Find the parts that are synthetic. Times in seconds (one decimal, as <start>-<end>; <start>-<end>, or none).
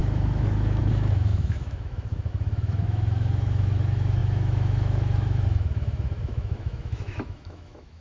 0.0-8.0